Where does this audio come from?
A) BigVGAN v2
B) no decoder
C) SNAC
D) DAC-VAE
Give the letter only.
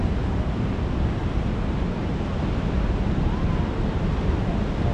B